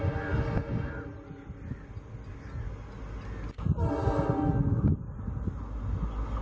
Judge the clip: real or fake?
real